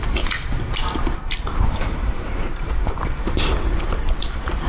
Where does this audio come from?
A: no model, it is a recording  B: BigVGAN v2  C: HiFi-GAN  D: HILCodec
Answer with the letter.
B